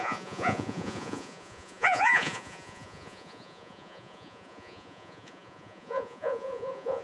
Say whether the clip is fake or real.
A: fake